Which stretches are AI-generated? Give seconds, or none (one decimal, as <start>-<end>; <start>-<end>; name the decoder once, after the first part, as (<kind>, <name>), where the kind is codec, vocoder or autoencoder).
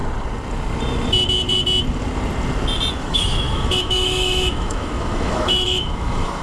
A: 3.0-6.4 (autoencoder, DAC-VAE)